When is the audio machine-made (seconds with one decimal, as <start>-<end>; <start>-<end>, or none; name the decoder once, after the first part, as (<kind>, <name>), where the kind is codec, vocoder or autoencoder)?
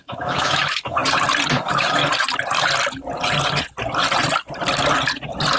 0.0-1.0 (autoencoder, DAC-VAE); 1.6-2.0